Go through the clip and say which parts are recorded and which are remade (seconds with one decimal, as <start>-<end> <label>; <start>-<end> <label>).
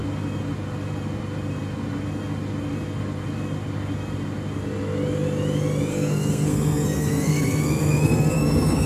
0.0-5.9 recorded; 5.9-8.9 remade